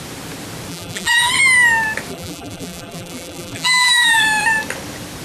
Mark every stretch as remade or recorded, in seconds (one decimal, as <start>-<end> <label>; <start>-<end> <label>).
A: 0.0-0.7 recorded; 0.7-1.3 remade; 1.3-2.1 recorded; 2.1-4.2 remade; 4.2-5.2 recorded